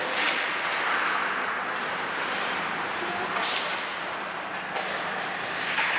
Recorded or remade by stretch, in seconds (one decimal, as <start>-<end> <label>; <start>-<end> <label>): 0.0-6.0 recorded